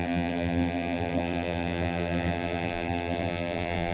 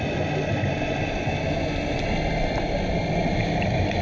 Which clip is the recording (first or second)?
second